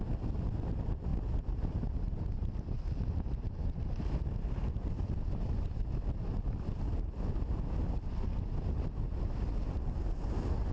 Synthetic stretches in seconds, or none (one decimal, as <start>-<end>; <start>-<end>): none